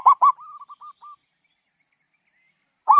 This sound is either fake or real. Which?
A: real